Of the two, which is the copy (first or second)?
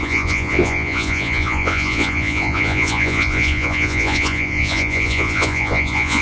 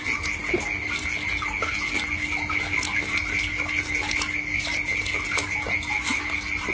first